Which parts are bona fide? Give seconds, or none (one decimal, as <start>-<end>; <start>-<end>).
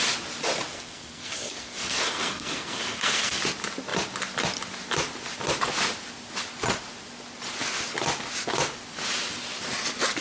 0.0-0.7; 3.4-10.2